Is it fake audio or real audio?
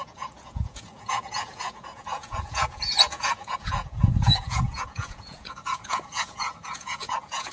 fake